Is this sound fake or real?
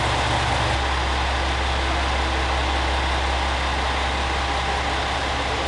real